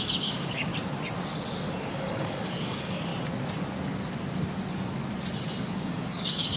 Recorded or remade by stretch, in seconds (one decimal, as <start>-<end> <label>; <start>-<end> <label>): 0.0-0.7 remade; 0.7-1.9 recorded; 1.9-3.1 remade; 3.1-5.6 recorded; 5.6-6.6 remade